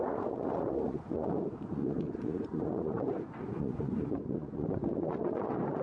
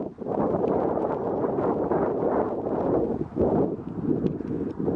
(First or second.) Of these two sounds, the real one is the second